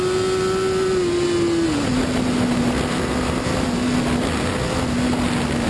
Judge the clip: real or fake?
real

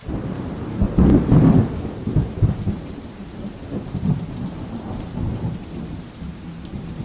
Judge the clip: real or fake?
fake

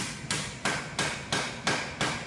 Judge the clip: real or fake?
real